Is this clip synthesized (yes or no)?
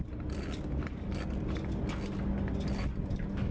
no